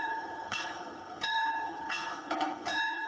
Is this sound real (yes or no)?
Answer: no